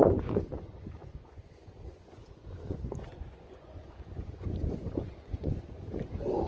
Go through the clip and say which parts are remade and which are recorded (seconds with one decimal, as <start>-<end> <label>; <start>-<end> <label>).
0.0-6.5 remade